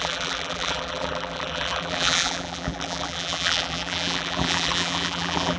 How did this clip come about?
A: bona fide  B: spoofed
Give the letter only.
B